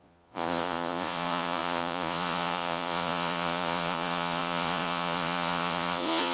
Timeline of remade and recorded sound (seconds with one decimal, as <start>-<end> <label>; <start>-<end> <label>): 0.0-6.3 remade